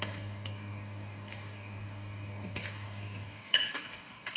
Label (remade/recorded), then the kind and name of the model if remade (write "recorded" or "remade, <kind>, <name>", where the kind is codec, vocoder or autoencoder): remade, codec, DAC